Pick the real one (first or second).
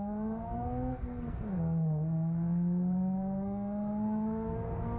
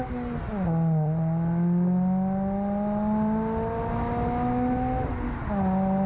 second